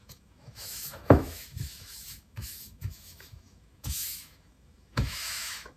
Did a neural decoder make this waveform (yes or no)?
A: yes